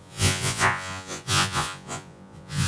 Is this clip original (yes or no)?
no